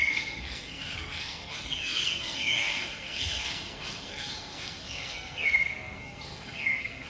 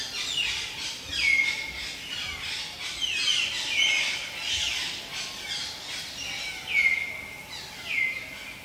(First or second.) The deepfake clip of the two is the first